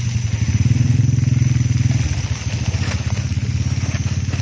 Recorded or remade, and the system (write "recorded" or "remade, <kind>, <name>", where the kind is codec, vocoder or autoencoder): recorded